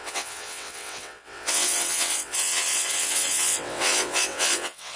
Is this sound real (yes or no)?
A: no